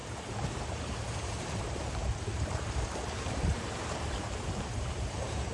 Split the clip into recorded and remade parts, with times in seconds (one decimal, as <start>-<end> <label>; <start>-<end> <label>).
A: 0.0-5.5 remade

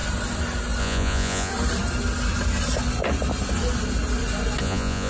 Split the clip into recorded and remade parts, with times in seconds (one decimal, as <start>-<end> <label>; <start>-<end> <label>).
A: 0.0-0.8 recorded; 0.8-1.5 remade; 1.5-4.6 recorded; 4.6-5.1 remade

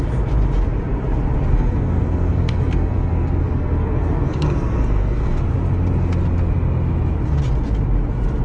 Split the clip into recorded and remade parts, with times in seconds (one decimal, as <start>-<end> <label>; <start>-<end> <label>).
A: 0.0-1.5 recorded; 1.5-5.4 remade; 5.4-8.4 recorded

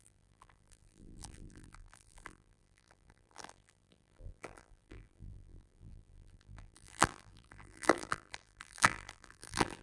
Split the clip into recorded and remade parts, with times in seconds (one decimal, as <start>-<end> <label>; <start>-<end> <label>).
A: 0.0-9.8 remade

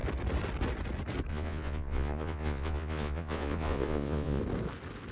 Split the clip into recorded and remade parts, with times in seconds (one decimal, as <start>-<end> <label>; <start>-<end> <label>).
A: 0.0-1.3 recorded; 1.3-4.4 remade; 4.4-5.1 recorded

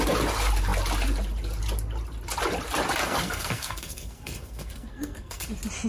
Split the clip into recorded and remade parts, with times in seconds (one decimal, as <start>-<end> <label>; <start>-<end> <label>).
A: 0.0-3.0 recorded; 3.0-5.5 remade; 5.5-5.9 recorded

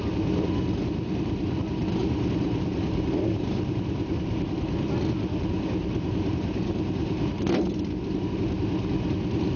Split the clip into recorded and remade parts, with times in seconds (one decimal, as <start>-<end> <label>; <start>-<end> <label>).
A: 0.0-2.0 recorded; 2.0-5.0 remade; 5.0-5.8 recorded; 5.8-7.7 remade; 7.7-9.6 recorded

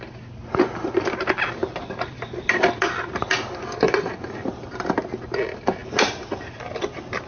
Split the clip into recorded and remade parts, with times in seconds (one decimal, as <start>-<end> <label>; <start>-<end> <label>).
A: 0.0-1.6 recorded; 1.6-4.9 remade; 4.9-7.3 recorded